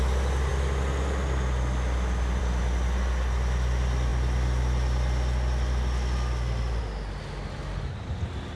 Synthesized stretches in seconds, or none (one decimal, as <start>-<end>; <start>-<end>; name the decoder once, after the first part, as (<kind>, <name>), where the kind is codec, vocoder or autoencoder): none